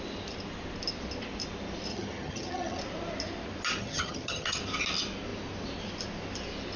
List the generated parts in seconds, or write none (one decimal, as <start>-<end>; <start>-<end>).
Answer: 1.9-2.8; 3.8-4.6

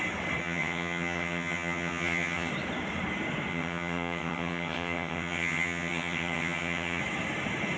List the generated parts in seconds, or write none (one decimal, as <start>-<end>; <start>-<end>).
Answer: 0.4-2.5; 3.5-7.0

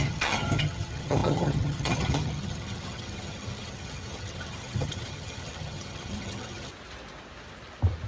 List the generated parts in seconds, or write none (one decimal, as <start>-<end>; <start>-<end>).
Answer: 0.0-6.7

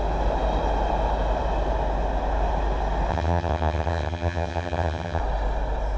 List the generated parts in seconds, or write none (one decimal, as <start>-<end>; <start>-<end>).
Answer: 3.1-5.2